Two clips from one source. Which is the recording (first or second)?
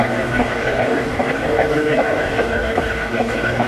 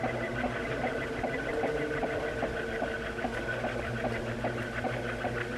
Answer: second